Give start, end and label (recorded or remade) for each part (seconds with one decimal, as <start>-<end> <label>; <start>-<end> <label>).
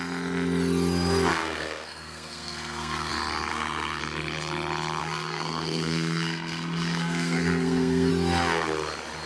0.0-1.3 recorded; 1.3-3.1 remade; 3.1-3.5 recorded; 3.5-4.0 remade; 4.0-5.0 recorded; 5.0-8.1 remade; 8.1-9.3 recorded